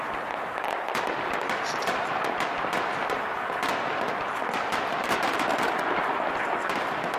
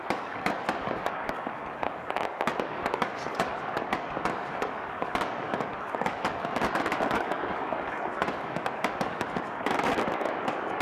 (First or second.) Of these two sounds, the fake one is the second